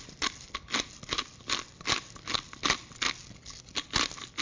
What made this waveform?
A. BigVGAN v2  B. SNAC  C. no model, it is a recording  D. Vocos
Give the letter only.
C